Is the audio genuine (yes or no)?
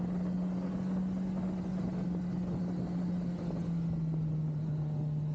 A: yes